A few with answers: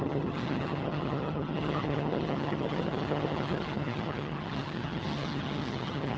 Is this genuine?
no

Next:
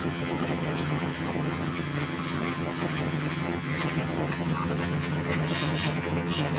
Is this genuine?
no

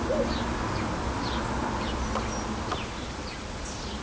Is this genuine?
yes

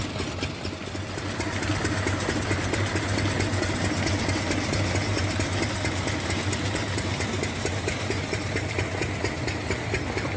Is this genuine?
yes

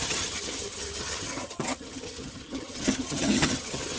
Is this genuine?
no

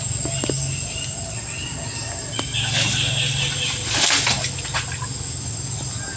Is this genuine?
yes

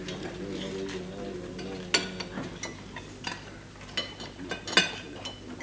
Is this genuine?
yes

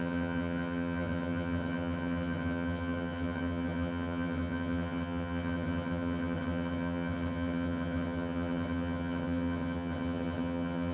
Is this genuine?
no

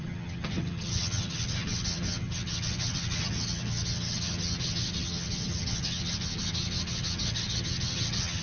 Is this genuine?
no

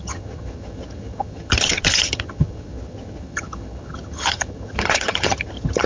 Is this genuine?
no